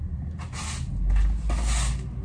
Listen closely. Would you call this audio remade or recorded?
recorded